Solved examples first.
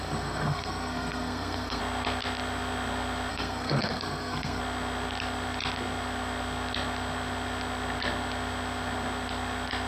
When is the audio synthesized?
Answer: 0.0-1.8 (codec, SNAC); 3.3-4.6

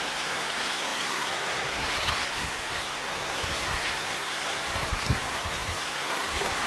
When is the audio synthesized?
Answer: 0.0-6.7 (codec, SNAC)